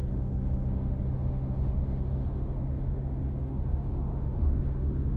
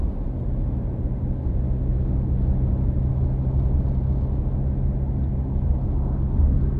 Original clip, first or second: second